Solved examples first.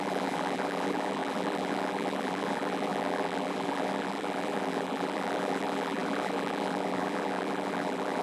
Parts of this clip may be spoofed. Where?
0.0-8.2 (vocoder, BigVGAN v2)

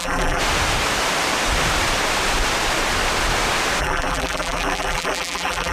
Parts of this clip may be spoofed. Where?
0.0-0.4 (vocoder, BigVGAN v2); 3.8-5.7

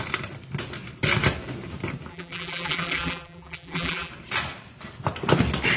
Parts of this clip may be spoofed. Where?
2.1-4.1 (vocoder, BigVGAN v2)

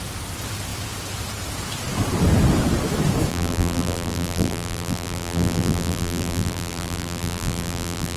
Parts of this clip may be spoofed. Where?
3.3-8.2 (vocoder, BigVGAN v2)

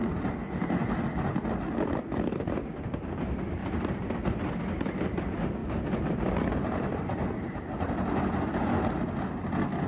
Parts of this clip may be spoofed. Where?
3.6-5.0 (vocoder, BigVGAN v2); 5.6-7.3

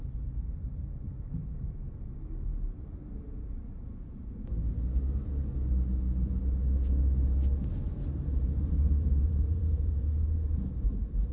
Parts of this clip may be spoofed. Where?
2.5-4.4 (vocoder, BigVGAN v2); 7.9-11.3